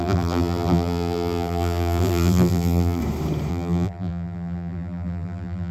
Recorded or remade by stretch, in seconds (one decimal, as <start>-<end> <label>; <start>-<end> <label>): 0.0-3.0 remade; 3.0-3.5 recorded; 3.5-5.7 remade